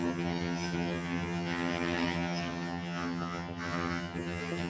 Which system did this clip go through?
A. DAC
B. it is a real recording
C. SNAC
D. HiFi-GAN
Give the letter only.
D